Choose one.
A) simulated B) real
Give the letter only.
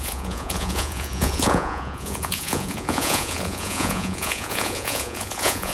A